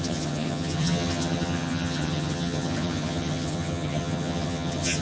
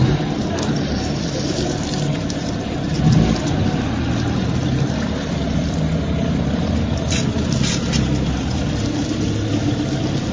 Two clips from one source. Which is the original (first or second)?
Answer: second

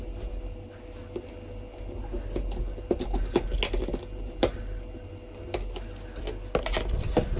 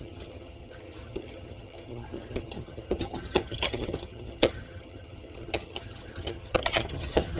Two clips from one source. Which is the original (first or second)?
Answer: first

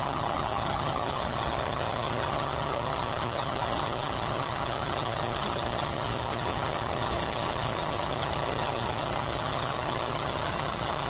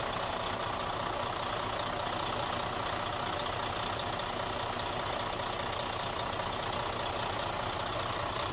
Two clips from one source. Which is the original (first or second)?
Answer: second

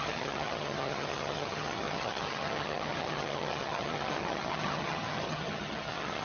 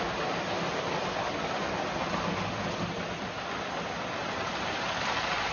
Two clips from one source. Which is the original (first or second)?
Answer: second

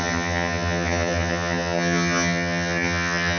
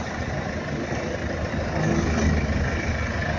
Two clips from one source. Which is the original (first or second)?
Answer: second